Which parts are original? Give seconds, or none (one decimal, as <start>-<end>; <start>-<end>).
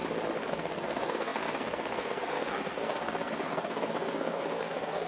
0.0-0.5